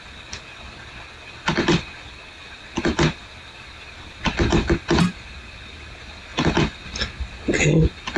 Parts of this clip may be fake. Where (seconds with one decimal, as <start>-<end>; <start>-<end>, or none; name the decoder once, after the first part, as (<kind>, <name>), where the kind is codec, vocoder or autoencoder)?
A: 3.2-4.3 (vocoder, BigVGAN v2)